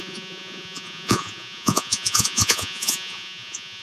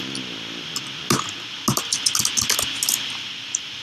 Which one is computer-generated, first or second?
first